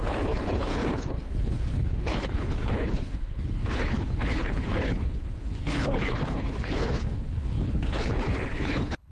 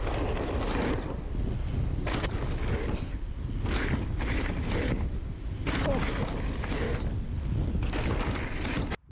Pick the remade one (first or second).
first